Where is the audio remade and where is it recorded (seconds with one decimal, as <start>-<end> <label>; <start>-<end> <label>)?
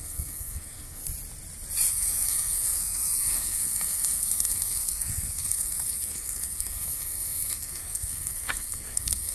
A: 0.0-1.0 remade; 1.0-1.9 recorded; 1.9-9.3 remade